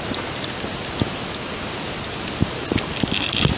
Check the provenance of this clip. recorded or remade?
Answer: recorded